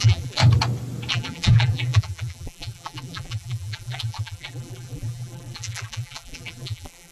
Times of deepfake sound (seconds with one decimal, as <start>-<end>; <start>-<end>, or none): 0.0-0.4; 1.1-7.1